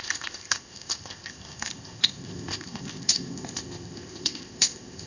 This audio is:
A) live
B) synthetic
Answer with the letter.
B